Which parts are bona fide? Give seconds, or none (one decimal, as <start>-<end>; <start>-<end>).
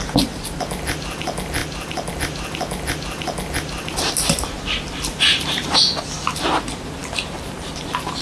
0.0-8.2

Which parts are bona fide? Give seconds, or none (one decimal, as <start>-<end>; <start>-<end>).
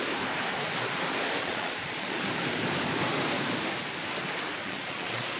0.0-1.4; 2.2-4.6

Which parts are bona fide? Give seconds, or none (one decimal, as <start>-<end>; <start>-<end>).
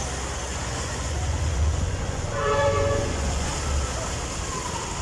0.0-0.5; 3.5-5.0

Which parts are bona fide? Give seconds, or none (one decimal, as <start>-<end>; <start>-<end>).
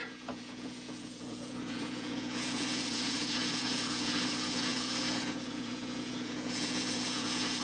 none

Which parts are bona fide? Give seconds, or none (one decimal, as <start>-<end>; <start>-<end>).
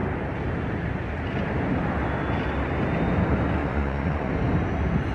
0.0-3.6; 4.3-5.1